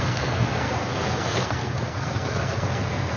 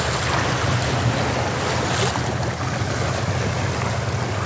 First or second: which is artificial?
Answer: first